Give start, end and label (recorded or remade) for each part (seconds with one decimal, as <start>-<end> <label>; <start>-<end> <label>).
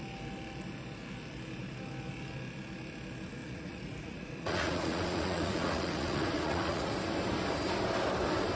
0.0-3.4 recorded; 3.4-6.9 remade; 6.9-8.6 recorded